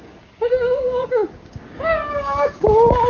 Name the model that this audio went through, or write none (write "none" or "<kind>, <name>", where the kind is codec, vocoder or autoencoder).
codec, DAC